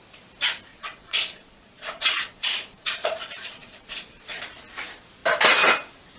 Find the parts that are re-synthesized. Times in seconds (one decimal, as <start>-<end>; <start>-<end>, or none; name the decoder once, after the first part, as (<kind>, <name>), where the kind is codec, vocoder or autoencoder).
0.7-4.4 (vocoder, Vocos)